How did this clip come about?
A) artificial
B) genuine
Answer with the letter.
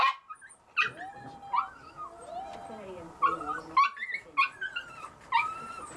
B